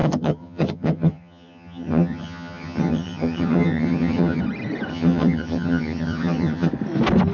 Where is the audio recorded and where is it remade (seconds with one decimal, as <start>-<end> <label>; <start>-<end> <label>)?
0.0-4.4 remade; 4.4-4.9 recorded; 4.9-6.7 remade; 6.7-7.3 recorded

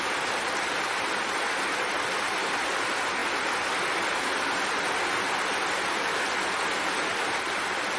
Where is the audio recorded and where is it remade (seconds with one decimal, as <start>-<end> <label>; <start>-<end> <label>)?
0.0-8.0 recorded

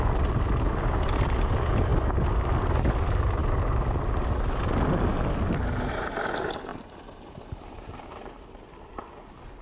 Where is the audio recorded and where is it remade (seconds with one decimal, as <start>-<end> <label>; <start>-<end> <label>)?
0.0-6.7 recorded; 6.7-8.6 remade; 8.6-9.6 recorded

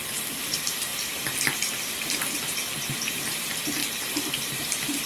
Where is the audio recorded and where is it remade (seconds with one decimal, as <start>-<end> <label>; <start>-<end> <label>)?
0.0-0.9 remade; 0.9-2.9 recorded; 2.9-3.8 remade; 3.8-4.6 recorded; 4.6-5.1 remade

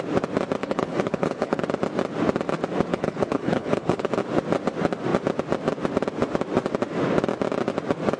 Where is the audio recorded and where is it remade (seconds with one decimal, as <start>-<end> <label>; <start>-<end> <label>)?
0.0-0.6 recorded; 0.6-1.6 remade; 1.6-2.9 recorded; 2.9-4.1 remade; 4.1-8.2 recorded